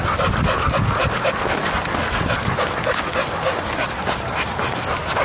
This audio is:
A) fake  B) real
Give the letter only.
B